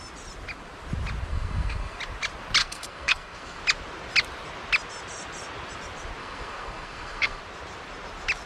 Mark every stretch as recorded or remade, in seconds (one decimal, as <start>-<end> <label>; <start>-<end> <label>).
0.0-1.3 recorded; 1.3-2.0 remade; 2.0-2.6 recorded; 2.6-3.6 remade; 3.6-6.2 recorded; 6.2-7.4 remade; 7.4-8.5 recorded